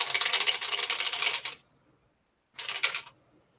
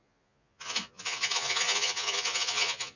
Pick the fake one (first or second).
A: second